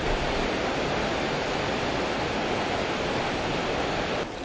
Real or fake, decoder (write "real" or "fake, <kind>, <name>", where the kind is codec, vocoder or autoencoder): real